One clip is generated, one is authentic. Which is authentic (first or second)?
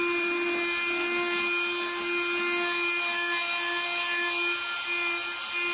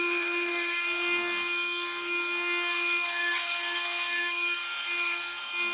first